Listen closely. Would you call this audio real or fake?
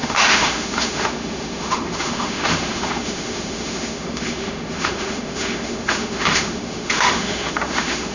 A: fake